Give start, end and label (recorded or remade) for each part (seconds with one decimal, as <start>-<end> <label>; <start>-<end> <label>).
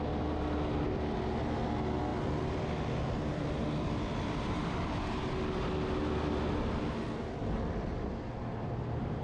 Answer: 0.0-2.1 recorded; 2.1-5.3 remade; 5.3-7.9 recorded; 7.9-9.2 remade